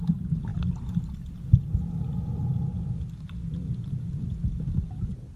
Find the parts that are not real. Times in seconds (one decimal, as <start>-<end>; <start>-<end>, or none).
none